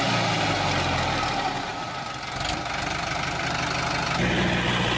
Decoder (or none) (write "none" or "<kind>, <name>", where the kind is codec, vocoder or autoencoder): none